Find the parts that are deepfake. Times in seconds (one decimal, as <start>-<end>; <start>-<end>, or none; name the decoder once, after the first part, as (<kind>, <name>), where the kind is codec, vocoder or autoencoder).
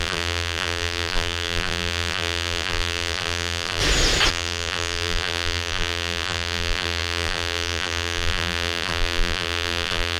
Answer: 0.0-3.8 (vocoder, BigVGAN v2); 4.3-10.2